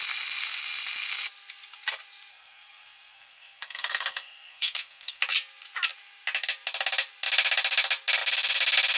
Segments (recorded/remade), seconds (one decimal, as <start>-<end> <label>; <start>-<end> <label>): 0.0-2.3 recorded; 2.3-5.2 remade; 5.2-9.0 recorded